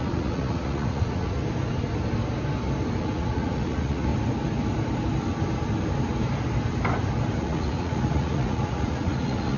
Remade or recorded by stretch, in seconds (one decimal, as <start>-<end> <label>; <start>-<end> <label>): 0.0-1.4 remade; 1.4-3.0 recorded; 3.0-4.1 remade; 4.1-7.4 recorded; 7.4-9.6 remade